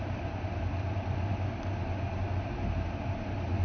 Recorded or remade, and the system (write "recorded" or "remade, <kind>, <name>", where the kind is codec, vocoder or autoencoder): recorded